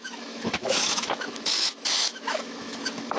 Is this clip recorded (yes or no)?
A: no